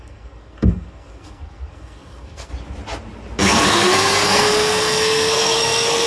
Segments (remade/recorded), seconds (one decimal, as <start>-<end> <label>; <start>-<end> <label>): 0.0-2.5 remade; 2.5-3.4 recorded; 3.4-6.1 remade